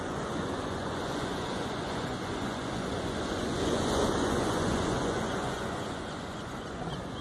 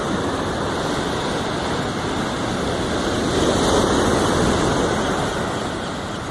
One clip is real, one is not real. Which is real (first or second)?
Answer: second